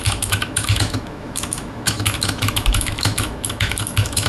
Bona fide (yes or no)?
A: no